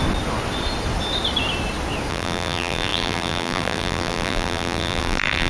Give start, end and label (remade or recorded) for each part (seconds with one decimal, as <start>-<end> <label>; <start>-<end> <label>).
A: 0.0-2.1 recorded; 2.1-5.5 remade

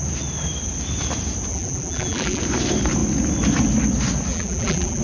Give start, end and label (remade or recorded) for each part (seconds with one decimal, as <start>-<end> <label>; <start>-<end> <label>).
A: 0.0-1.5 recorded; 1.5-2.4 remade; 2.4-4.3 recorded; 4.3-5.0 remade

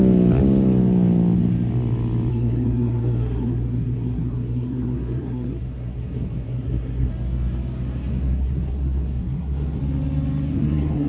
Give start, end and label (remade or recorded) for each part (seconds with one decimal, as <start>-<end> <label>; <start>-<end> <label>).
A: 0.0-2.3 recorded; 2.3-7.1 remade; 7.1-8.1 recorded; 8.1-9.8 remade; 9.8-10.5 recorded; 10.5-11.1 remade

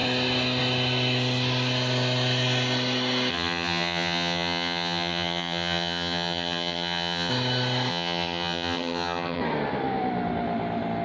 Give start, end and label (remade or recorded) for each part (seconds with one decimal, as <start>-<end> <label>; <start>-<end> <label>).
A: 0.0-3.3 recorded; 3.3-7.3 remade; 7.3-7.9 recorded; 7.9-9.4 remade; 9.4-11.0 recorded

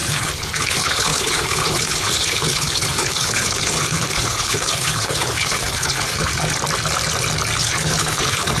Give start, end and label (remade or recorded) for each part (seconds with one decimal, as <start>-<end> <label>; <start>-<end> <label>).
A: 0.0-6.3 remade; 6.3-7.6 recorded; 7.6-8.6 remade